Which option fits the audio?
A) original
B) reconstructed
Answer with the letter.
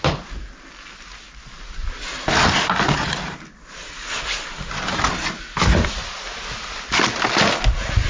A